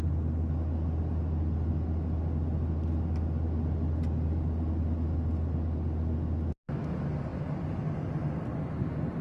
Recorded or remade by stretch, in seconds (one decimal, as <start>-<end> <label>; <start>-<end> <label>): 0.0-9.2 recorded